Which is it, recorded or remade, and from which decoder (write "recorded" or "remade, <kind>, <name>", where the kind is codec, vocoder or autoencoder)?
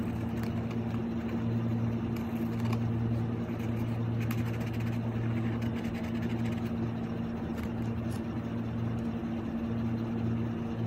recorded